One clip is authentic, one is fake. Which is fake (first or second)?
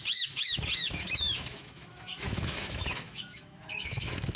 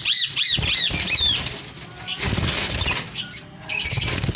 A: first